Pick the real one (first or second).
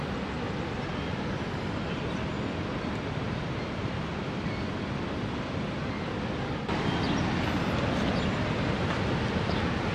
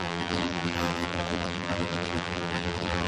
first